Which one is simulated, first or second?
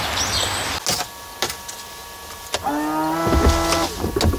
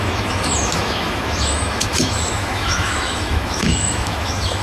second